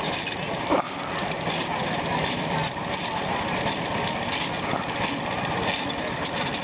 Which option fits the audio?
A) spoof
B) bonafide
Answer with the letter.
B